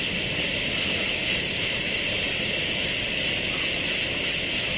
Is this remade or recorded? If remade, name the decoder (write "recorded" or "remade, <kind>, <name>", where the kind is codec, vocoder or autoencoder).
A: recorded